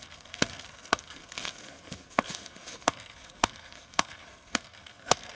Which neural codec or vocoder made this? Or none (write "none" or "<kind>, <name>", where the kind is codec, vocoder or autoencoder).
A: codec, SNAC